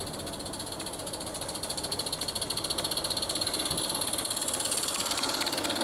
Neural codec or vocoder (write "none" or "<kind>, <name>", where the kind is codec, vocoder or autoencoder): none